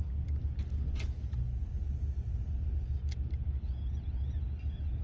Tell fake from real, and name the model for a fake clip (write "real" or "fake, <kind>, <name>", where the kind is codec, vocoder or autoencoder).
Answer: real